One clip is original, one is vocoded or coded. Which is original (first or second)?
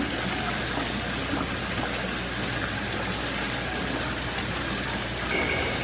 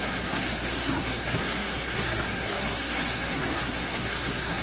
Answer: first